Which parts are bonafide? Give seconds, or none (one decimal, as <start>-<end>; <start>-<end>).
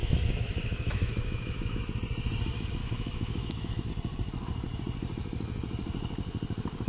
1.8-2.8; 3.9-6.9